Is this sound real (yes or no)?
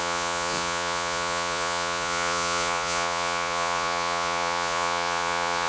no